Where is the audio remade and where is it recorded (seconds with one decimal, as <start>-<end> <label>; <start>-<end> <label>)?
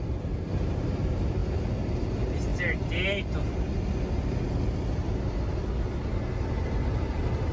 0.0-7.5 recorded